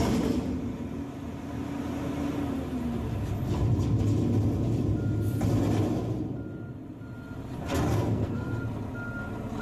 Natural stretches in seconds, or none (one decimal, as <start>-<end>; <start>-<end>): 0.0-7.9; 8.6-9.6